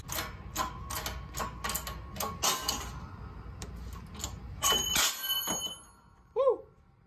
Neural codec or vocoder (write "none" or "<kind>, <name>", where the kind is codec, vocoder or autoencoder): none